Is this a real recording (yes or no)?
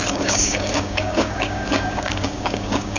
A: no